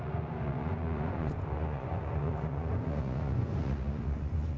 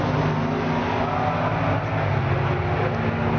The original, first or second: second